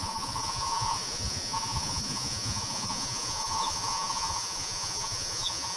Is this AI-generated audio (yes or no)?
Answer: yes